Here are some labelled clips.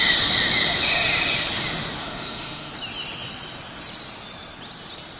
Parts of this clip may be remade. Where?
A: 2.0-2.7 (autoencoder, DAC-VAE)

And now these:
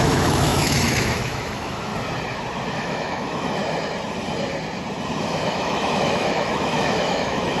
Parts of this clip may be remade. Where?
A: 0.0-1.9 (autoencoder, DAC-VAE); 2.7-3.6; 5.2-7.6